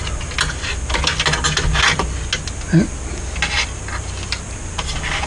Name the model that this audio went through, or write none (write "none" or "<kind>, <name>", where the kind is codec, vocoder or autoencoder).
none